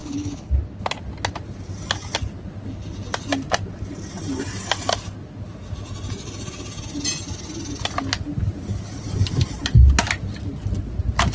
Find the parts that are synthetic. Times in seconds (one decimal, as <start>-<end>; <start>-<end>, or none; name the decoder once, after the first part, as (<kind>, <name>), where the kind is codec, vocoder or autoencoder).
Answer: 0.0-0.5 (codec, HILCodec)